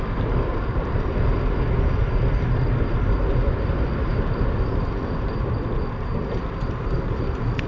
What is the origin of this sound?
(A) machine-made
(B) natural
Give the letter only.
B